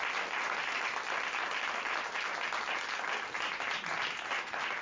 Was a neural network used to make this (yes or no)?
no